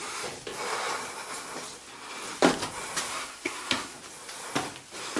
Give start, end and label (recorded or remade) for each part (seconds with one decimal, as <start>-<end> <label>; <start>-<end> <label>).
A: 0.0-3.1 recorded; 3.1-4.0 remade; 4.0-5.2 recorded